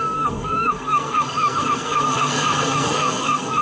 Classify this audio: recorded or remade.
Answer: remade